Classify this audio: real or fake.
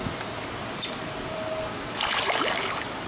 real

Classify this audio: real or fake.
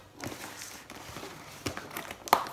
real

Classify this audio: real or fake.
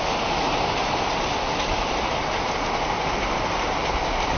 real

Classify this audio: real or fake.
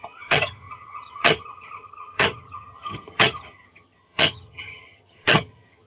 fake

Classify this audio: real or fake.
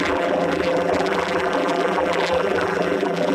fake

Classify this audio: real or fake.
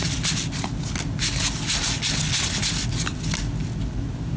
real